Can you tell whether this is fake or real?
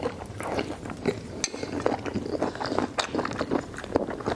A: real